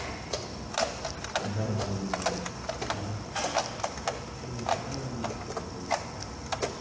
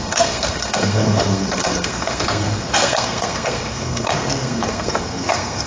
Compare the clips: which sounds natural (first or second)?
first